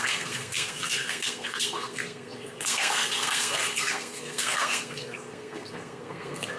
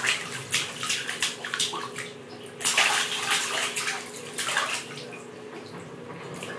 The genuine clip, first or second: second